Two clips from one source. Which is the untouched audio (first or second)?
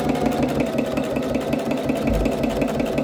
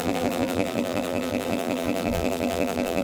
first